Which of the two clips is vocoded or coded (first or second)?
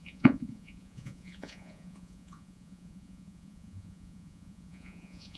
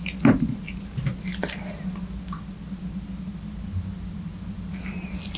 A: first